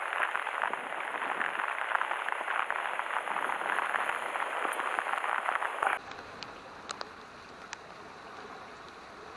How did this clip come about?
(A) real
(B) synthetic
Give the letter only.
A